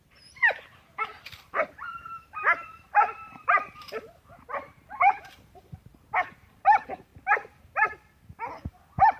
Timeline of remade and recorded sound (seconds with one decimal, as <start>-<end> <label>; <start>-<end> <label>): 0.0-5.9 remade; 5.9-6.4 recorded; 6.4-7.1 remade; 7.1-7.6 recorded; 7.6-9.2 remade